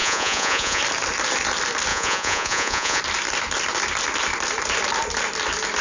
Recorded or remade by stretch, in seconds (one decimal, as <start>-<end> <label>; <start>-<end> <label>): 0.0-0.8 remade; 0.8-1.9 recorded; 1.9-3.0 remade; 3.0-5.8 recorded